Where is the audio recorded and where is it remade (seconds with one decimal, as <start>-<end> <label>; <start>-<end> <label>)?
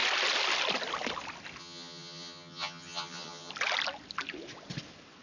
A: 0.0-1.6 recorded; 1.6-3.5 remade; 3.5-5.2 recorded